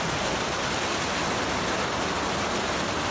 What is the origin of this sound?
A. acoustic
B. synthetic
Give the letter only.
A